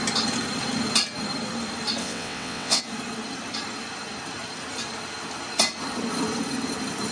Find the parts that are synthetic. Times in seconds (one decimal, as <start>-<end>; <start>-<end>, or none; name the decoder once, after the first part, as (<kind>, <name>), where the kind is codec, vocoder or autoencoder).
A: 2.0-2.8 (vocoder, WaveNeXt)